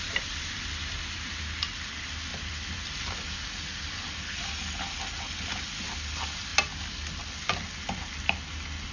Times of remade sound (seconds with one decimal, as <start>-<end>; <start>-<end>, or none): 2.3-3.5